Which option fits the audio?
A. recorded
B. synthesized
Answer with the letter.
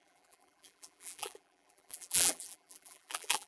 B